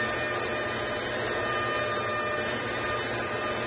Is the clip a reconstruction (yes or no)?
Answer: no